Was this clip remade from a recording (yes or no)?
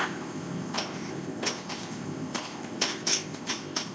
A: yes